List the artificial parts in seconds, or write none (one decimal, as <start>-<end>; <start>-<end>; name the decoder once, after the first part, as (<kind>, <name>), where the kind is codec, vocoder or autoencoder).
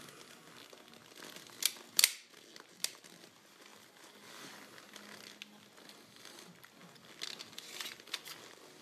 3.7-4.8 (vocoder, BigVGAN v2)